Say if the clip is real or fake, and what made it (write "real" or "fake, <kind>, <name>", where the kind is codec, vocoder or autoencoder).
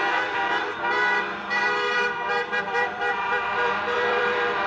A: fake, vocoder, BigVGAN v2